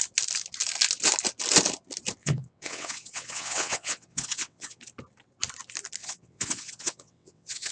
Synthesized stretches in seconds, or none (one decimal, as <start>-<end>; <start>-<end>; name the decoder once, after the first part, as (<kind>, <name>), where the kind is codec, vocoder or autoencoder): 2.2-4.8 (vocoder, WaveNeXt); 6.0-7.7